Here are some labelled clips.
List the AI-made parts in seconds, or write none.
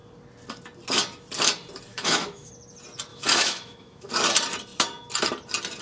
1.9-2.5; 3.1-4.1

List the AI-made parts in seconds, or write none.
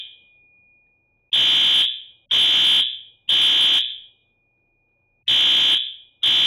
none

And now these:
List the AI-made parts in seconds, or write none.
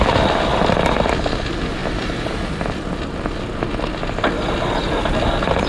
none